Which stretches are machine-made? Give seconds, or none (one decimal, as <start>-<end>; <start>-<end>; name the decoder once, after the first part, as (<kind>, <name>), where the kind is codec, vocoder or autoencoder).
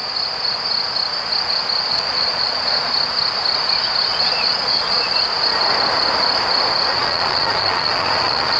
1.9-2.9 (vocoder, Vocos); 4.1-5.0; 6.9-8.6